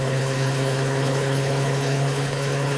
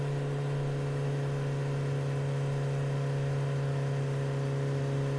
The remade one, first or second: first